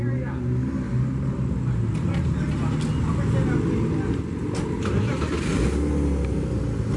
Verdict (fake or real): real